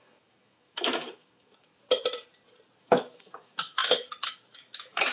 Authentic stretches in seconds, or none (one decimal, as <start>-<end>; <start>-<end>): 1.7-2.8